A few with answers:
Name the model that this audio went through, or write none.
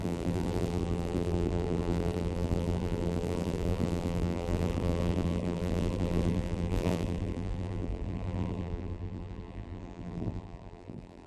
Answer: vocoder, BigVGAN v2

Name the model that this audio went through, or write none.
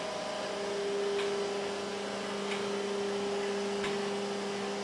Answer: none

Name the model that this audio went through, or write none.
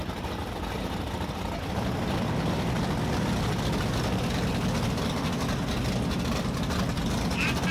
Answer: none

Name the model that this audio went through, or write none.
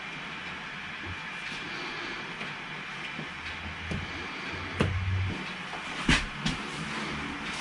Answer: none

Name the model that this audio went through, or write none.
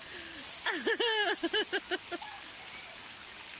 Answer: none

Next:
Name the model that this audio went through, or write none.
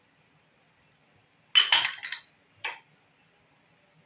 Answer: none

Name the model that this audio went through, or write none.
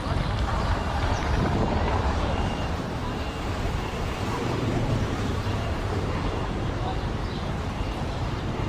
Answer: vocoder, BigVGAN v2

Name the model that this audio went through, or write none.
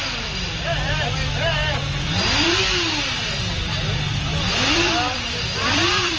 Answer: vocoder, BigVGAN v2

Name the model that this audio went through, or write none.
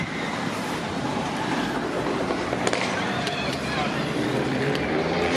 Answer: vocoder, BigVGAN v2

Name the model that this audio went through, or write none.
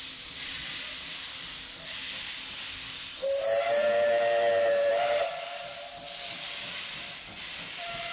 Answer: vocoder, BigVGAN v2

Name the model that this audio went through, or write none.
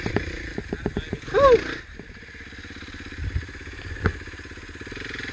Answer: none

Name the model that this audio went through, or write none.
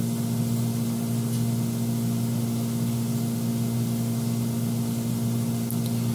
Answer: none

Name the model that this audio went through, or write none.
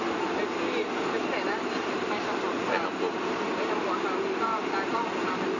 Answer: vocoder, BigVGAN v2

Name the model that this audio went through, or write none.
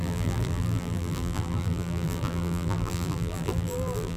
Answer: vocoder, BigVGAN v2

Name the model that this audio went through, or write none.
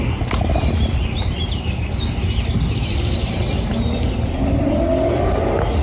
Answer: none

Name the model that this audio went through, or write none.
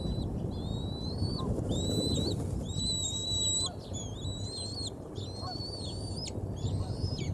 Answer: none